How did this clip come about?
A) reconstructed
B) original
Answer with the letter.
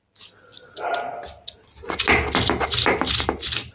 B